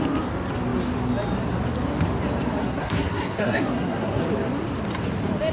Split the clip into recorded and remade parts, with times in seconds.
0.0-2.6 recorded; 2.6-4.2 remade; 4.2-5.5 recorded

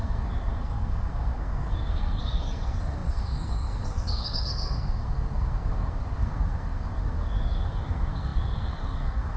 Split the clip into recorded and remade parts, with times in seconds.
0.0-9.4 remade